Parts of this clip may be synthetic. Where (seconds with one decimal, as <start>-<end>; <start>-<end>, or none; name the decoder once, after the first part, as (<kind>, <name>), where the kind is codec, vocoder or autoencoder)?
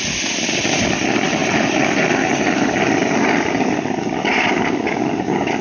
none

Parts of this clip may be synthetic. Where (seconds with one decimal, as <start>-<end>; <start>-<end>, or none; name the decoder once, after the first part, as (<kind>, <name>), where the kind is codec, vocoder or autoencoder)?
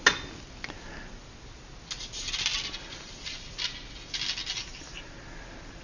none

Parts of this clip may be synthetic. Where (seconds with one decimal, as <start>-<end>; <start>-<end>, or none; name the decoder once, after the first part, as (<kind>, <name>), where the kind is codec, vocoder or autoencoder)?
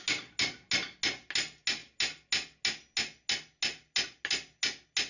none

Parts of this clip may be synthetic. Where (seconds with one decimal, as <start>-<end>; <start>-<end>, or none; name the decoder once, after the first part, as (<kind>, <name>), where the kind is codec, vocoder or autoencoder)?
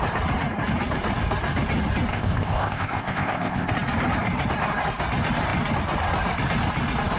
2.1-3.7 (codec, ZipCodec)